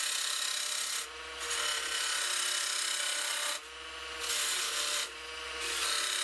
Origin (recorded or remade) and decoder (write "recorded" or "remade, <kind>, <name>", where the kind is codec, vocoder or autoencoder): recorded